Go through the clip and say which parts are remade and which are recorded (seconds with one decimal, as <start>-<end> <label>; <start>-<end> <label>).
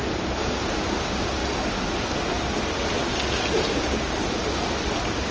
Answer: 0.0-5.3 recorded